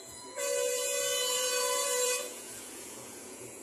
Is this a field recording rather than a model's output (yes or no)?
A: no